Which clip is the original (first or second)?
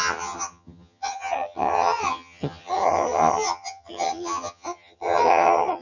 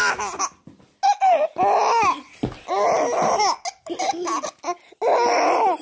second